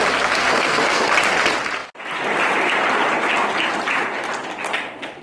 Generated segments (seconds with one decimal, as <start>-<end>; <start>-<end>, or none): 0.4-1.1